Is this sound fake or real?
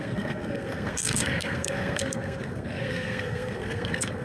fake